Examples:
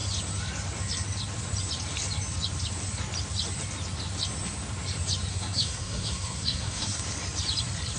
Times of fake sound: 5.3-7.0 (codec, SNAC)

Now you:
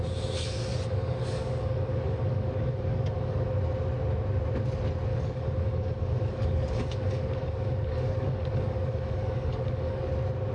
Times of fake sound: 0.7-3.5 (codec, DAC); 5.1-10.1

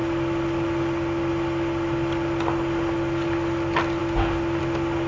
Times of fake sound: none

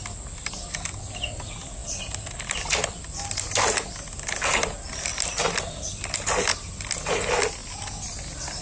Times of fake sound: none

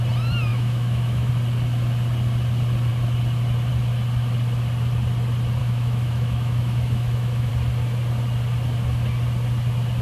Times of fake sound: 0.5-1.3 (autoencoder, DAC-VAE); 5.6-7.5

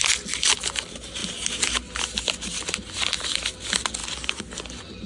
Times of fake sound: none

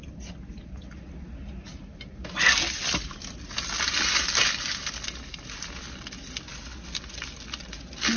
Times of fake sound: none

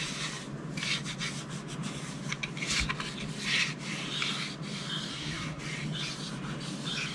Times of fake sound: 5.1-5.6 (codec, SNAC)